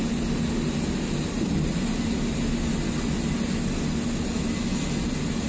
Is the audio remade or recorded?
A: recorded